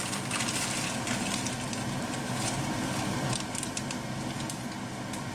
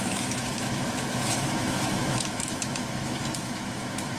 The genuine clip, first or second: first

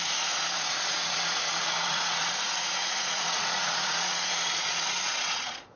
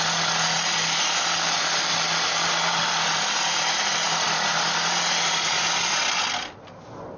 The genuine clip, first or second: second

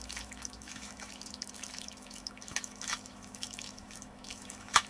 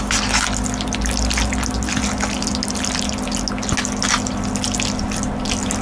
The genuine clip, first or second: second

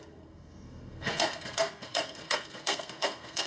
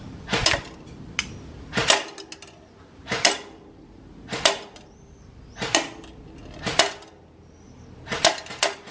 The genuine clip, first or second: second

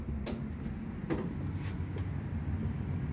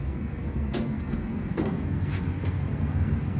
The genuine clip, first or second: first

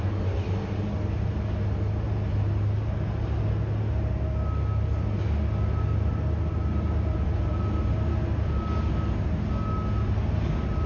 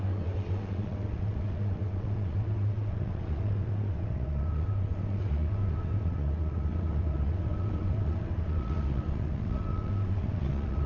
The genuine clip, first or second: first